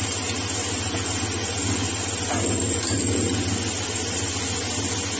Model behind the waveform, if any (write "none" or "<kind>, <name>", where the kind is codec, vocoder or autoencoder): none